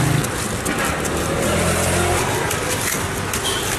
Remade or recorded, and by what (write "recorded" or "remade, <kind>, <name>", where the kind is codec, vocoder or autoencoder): recorded